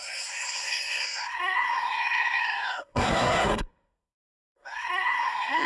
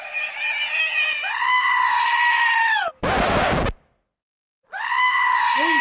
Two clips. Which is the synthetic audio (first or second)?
first